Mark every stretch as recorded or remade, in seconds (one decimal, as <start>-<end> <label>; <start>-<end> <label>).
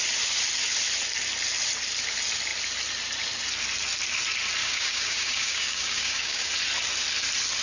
0.0-4.6 recorded; 4.6-6.5 remade; 6.5-7.6 recorded